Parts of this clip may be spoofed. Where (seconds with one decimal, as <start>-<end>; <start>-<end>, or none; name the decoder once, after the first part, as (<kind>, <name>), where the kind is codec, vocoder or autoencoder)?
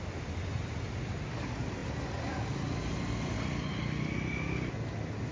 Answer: none